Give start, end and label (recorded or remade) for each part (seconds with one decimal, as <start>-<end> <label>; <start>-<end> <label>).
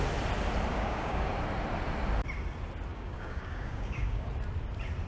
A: 0.0-0.7 recorded; 0.7-1.3 remade; 1.3-2.9 recorded; 2.9-4.3 remade; 4.3-5.1 recorded